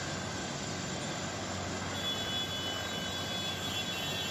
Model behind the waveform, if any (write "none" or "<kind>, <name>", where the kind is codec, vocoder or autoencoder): none